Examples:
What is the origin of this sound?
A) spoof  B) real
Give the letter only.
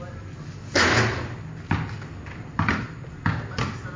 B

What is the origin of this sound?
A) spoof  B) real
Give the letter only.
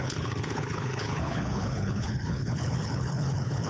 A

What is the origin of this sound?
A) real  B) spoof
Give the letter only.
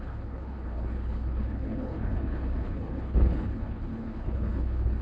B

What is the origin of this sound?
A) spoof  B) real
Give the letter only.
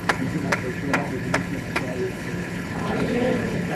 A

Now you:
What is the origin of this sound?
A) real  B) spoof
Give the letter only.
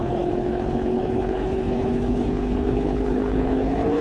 B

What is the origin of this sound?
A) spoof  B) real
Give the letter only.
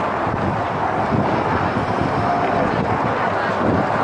B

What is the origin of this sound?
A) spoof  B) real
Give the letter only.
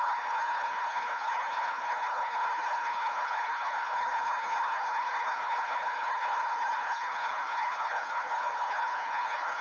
A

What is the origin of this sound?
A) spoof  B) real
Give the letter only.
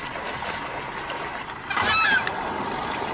B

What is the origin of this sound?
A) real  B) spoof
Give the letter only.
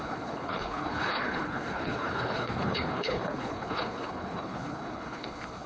B